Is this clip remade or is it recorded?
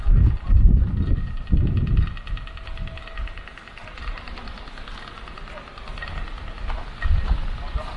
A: recorded